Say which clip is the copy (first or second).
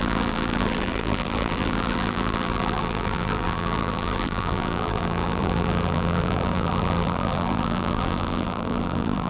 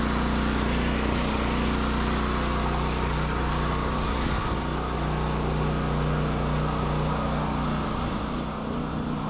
first